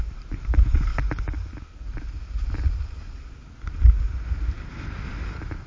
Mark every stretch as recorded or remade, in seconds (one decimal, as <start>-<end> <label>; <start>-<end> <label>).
0.0-0.9 remade; 0.9-4.3 recorded; 4.3-4.7 remade; 4.7-5.2 recorded; 5.2-5.7 remade